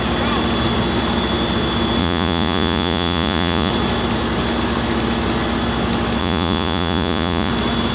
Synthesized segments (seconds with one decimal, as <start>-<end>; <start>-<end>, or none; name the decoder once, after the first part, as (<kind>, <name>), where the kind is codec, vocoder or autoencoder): 2.0-3.7 (vocoder, Vocos); 6.2-7.5